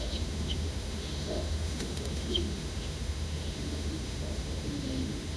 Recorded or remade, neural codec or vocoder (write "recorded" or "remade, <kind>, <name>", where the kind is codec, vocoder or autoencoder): remade, autoencoder, DAC-VAE